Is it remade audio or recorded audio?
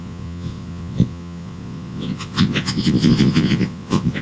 remade